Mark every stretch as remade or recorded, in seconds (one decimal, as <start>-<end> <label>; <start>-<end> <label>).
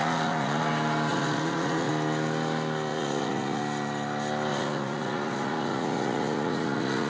0.0-0.7 remade; 0.7-1.1 recorded; 1.1-1.9 remade; 1.9-2.9 recorded; 2.9-3.6 remade; 3.6-4.5 recorded; 4.5-7.1 remade